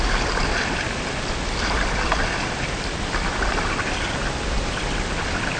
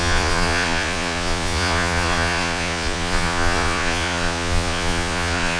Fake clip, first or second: second